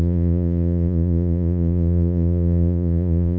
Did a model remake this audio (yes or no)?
yes